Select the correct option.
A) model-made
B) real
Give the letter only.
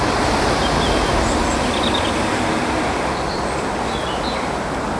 B